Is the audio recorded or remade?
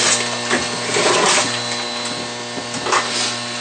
recorded